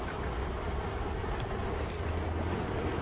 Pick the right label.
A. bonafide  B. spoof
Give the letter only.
A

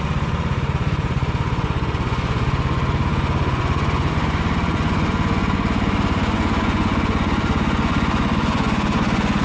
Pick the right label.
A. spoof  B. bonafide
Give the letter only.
A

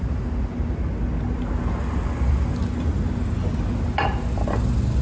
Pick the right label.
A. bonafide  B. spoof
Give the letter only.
A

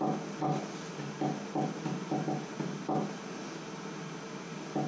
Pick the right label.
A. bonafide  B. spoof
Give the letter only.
A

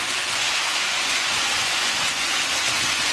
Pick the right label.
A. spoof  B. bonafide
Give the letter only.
A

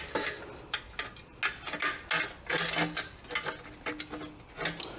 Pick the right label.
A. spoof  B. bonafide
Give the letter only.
B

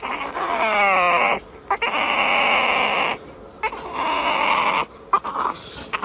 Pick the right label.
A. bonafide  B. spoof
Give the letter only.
A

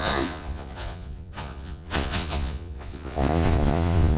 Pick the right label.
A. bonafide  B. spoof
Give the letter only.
B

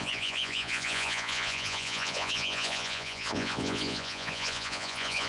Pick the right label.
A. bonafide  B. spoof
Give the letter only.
B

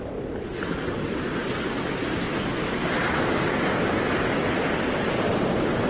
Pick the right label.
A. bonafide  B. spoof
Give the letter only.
A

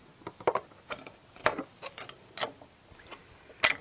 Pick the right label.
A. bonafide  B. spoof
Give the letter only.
A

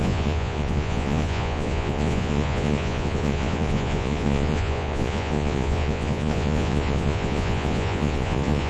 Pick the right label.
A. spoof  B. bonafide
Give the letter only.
A